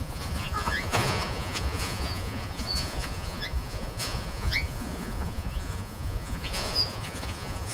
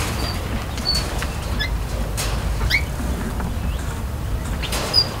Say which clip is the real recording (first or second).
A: second